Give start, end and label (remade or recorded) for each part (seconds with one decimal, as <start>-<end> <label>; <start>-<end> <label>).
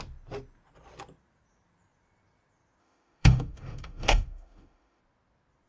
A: 0.0-2.8 recorded; 2.8-5.0 remade; 5.0-5.7 recorded